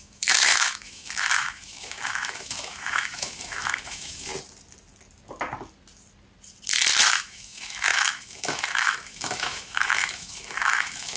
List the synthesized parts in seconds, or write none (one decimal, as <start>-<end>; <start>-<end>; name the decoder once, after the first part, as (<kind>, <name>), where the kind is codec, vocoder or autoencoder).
0.0-4.3 (autoencoder, DAC-VAE); 7.1-11.2